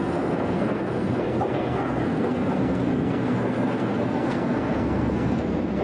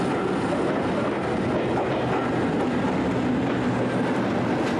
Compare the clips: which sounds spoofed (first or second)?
first